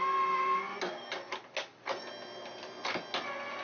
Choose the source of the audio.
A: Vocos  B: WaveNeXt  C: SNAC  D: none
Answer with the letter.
D